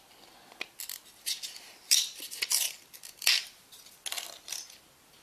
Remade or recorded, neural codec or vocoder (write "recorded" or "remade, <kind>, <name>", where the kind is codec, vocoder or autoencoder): recorded